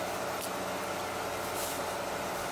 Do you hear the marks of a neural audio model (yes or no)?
no